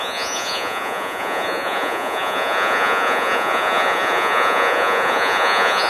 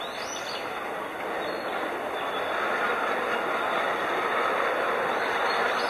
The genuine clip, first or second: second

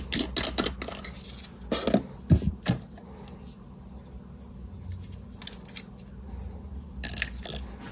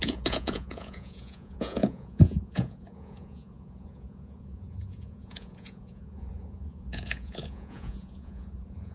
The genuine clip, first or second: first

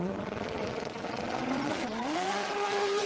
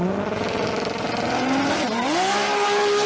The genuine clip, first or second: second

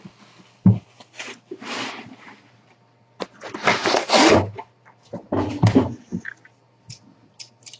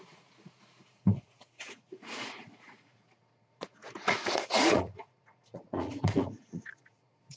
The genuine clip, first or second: first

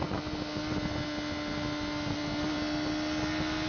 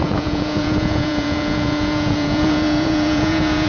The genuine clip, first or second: first